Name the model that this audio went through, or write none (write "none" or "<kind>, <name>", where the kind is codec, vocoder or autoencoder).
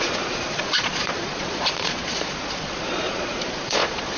vocoder, Vocos